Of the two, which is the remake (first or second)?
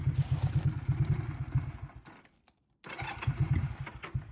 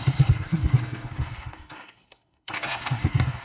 second